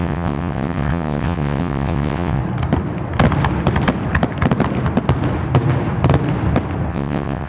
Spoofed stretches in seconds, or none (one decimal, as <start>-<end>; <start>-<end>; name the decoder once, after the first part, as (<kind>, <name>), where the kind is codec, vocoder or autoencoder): 0.0-2.4 (vocoder, WaveNeXt); 6.9-7.5

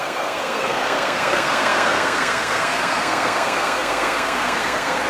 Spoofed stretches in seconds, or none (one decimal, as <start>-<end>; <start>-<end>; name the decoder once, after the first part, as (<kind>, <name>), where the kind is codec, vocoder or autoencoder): 0.0-5.1 (codec, SNAC)

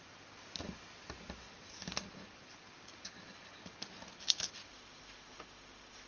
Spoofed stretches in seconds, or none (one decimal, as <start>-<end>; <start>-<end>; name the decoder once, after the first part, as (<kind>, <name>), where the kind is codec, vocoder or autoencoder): 4.7-6.1 (autoencoder, DAC-VAE)

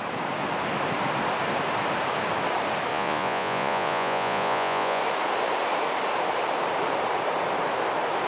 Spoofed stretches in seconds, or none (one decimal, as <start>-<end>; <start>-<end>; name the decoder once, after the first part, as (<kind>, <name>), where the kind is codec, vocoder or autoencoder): 2.9-5.0 (vocoder, Vocos)

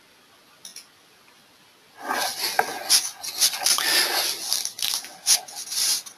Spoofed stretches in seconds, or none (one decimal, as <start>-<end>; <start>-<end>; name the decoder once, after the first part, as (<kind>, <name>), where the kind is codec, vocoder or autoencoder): none

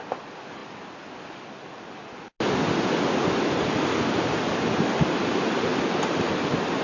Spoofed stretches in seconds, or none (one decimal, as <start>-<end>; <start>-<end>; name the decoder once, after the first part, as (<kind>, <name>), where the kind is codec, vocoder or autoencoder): none

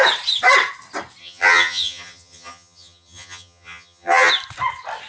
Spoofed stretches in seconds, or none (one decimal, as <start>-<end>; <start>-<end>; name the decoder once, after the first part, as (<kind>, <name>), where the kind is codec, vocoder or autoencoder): 1.2-4.3 (vocoder, HiFi-GAN)

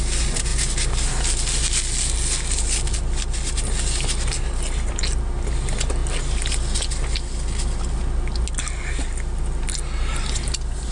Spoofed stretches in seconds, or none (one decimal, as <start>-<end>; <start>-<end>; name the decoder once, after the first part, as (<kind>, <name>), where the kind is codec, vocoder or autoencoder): none